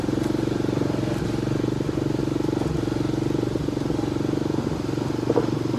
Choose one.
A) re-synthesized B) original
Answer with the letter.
B